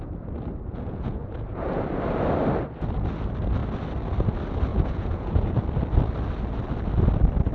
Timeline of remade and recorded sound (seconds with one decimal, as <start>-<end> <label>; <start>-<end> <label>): 0.0-0.7 recorded; 0.7-1.8 remade; 1.8-4.7 recorded; 4.7-5.6 remade; 5.6-7.5 recorded